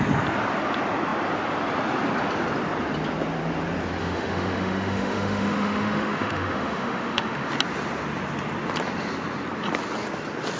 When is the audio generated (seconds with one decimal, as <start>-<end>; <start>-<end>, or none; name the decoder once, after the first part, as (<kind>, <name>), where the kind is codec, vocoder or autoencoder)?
4.0-7.5 (autoencoder, DAC-VAE)